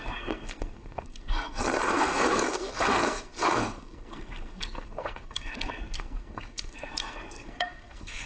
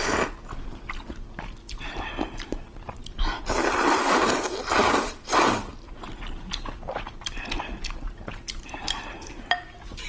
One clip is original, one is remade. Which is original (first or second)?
second